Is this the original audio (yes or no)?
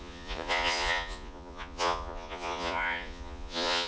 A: no